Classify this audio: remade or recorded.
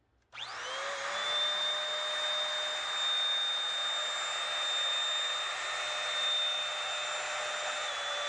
recorded